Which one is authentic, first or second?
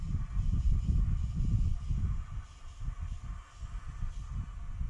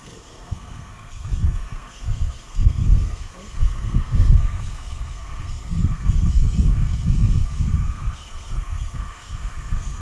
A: first